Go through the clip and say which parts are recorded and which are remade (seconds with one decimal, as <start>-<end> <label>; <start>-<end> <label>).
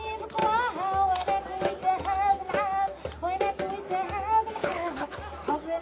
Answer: 0.0-4.6 recorded; 4.6-5.2 remade; 5.2-5.8 recorded